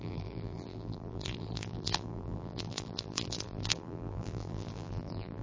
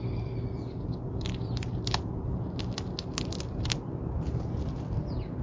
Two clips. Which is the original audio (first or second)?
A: second